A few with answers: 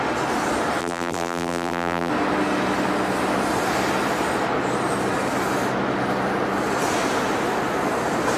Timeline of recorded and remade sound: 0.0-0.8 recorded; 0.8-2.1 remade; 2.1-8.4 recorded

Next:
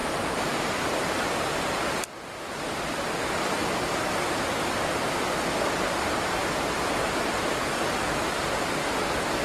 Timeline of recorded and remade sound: 0.0-1.4 remade; 1.4-9.4 recorded

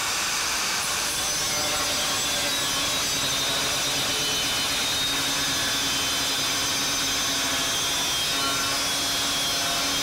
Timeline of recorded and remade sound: 0.0-1.3 remade; 1.3-10.0 recorded

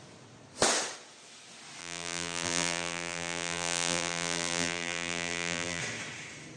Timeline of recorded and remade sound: 0.0-1.8 recorded; 1.8-5.8 remade; 5.8-6.6 recorded

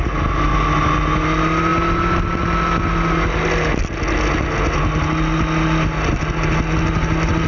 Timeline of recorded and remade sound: 0.0-7.5 recorded

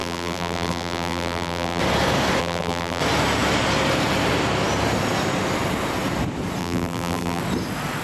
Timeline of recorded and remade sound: 0.0-1.8 remade; 1.8-2.4 recorded; 2.4-3.0 remade; 3.0-6.6 recorded; 6.6-7.4 remade; 7.4-8.0 recorded

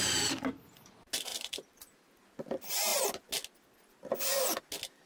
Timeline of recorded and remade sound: 0.0-1.3 recorded; 1.3-2.2 remade; 2.2-5.1 recorded